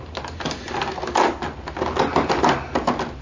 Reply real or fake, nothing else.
real